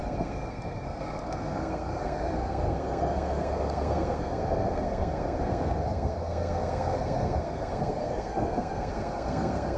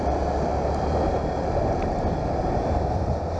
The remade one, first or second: first